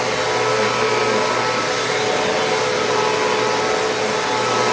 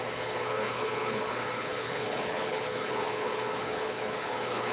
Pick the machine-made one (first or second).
second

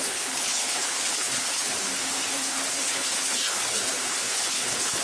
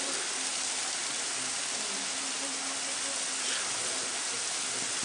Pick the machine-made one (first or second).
first